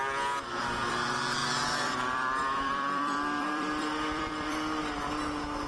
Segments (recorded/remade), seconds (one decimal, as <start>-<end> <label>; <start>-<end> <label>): 0.0-1.4 recorded; 1.4-4.8 remade; 4.8-5.7 recorded